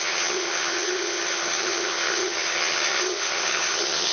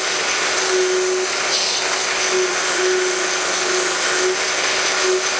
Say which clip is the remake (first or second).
first